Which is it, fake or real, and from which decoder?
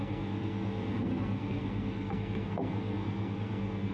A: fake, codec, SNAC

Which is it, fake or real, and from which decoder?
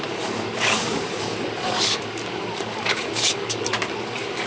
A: fake, codec, DAC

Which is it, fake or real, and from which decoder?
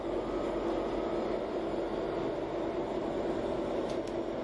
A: real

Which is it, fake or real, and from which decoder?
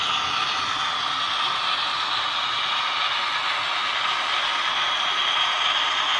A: real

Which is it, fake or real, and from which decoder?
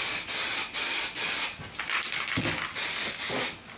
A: real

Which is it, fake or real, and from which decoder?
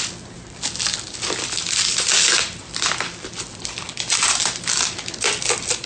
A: real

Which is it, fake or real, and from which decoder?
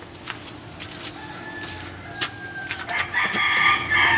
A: real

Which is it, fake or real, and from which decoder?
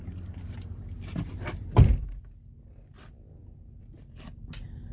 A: real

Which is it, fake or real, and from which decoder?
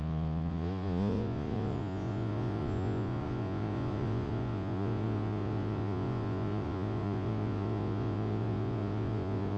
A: fake, vocoder, Vocos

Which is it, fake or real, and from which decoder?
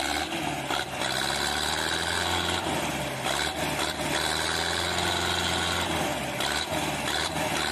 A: real